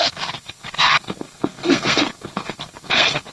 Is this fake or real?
fake